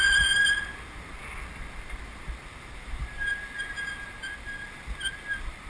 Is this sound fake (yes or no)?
no